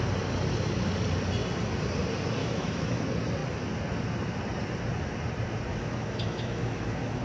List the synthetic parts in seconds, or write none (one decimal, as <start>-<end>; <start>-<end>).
2.4-3.0; 5.7-7.2